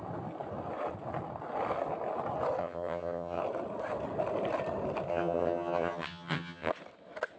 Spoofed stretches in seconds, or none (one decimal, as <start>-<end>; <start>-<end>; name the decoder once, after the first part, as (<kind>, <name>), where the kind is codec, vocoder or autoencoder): 2.6-3.4 (vocoder, HiFi-GAN); 5.1-6.7